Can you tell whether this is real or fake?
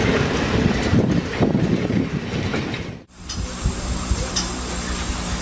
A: fake